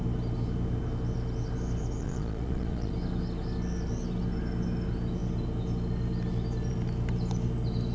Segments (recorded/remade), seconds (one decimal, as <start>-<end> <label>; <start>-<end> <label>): 0.0-2.0 recorded; 2.0-2.9 remade; 2.9-7.9 recorded